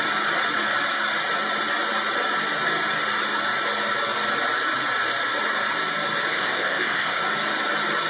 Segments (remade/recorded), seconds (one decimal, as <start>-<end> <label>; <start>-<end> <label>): 0.0-6.3 recorded; 6.3-7.2 remade; 7.2-8.1 recorded